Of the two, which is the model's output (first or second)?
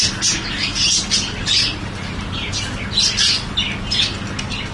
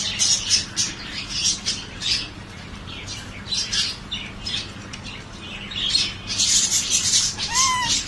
second